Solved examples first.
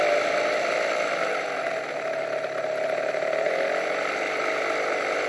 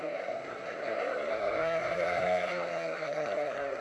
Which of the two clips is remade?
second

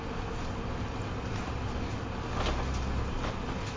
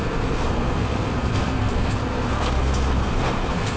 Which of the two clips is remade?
second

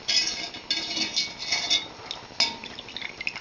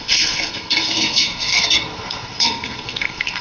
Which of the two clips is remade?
second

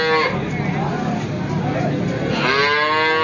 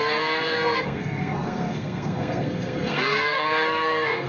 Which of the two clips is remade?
second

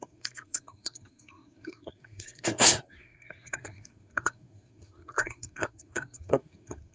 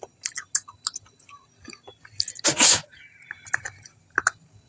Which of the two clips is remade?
first